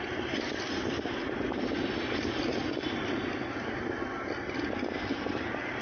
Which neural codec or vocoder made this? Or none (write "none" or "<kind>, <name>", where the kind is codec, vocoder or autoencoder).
none